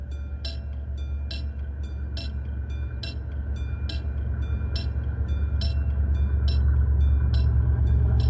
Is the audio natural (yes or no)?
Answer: yes